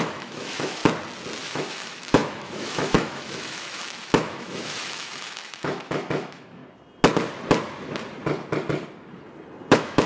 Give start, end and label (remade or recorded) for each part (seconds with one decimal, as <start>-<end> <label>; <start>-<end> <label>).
0.0-0.8 remade; 0.8-1.4 recorded; 1.4-6.6 remade; 6.6-9.7 recorded; 9.7-10.1 remade

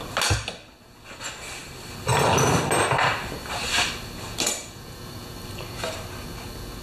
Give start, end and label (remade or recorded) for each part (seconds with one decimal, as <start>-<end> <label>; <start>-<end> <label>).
0.0-6.8 recorded

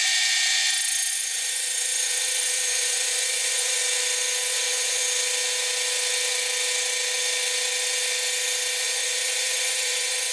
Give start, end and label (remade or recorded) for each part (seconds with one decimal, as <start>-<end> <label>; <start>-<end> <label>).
0.0-1.1 recorded; 1.1-3.8 remade; 3.8-4.5 recorded; 4.5-5.0 remade; 5.0-8.8 recorded; 8.8-10.3 remade

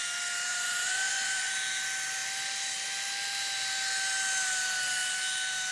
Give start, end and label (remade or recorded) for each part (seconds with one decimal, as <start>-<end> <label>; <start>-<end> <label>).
0.0-0.5 recorded; 0.5-1.5 remade; 1.5-5.7 recorded

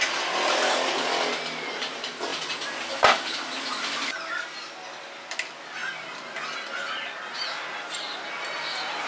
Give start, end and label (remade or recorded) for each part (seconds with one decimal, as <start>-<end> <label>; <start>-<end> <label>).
0.0-9.1 recorded

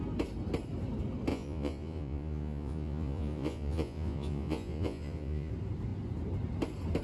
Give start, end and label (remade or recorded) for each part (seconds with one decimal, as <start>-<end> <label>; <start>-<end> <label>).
0.0-1.3 recorded; 1.3-5.5 remade; 5.5-7.0 recorded